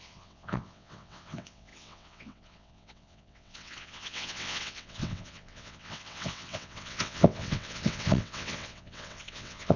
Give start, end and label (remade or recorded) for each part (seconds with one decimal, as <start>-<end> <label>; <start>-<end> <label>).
0.0-9.8 remade